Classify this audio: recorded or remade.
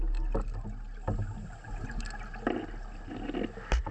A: recorded